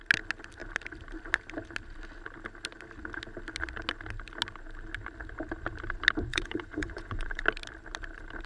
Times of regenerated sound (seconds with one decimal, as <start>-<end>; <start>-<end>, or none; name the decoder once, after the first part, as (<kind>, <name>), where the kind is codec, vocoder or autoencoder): 6.3-7.4 (vocoder, Vocos)